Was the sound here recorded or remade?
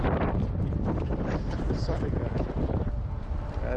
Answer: remade